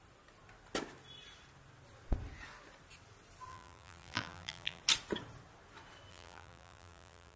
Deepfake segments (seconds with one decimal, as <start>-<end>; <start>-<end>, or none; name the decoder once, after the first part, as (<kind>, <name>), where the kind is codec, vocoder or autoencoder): 3.5-4.8 (vocoder, BigVGAN v2); 6.1-7.4